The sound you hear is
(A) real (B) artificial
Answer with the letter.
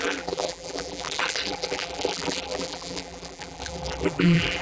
B